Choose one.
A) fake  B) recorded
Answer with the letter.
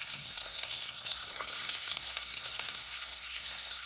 A